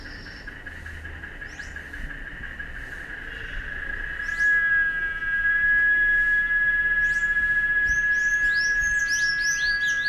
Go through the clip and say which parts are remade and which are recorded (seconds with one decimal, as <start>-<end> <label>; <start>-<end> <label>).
0.0-10.1 recorded